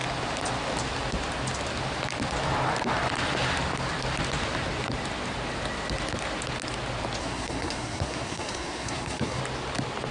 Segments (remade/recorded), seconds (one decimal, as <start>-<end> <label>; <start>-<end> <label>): 0.0-7.2 recorded; 7.2-9.4 remade; 9.4-10.1 recorded